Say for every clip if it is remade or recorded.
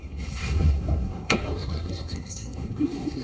remade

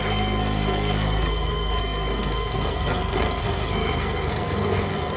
remade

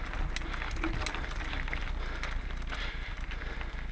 recorded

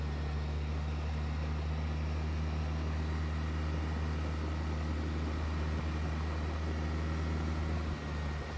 recorded